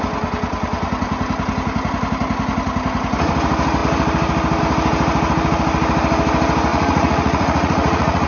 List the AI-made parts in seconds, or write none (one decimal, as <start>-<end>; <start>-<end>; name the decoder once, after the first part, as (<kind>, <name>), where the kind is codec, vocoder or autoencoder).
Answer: 6.7-8.3 (vocoder, Vocos)

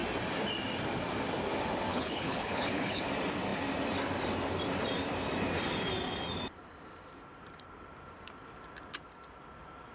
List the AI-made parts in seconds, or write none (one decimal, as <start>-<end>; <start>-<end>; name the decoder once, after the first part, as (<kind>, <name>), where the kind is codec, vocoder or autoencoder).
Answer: 1.9-3.0 (codec, HILCodec)

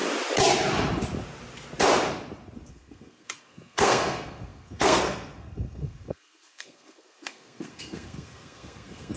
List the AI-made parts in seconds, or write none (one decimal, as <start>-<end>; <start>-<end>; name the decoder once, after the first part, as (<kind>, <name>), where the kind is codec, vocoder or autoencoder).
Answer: 2.7-9.2 (codec, SNAC)

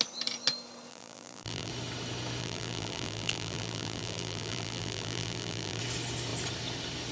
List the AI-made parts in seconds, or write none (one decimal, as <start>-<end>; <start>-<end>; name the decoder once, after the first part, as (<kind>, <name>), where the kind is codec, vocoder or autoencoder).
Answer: 0.9-1.7 (vocoder, BigVGAN v2); 2.4-5.8

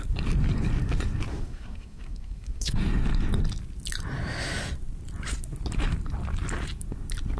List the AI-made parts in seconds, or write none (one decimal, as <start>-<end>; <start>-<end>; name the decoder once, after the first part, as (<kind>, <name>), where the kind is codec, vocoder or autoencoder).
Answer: 1.3-2.8 (codec, SNAC)